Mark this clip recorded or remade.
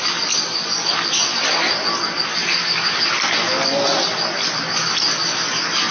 recorded